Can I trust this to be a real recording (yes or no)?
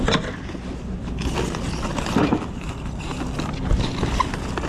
yes